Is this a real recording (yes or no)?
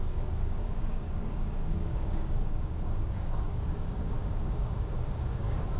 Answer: no